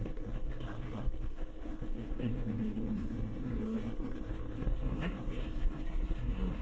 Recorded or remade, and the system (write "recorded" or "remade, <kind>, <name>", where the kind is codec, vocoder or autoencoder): remade, codec, SNAC